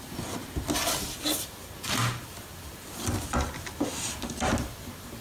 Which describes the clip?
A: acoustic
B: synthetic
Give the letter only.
A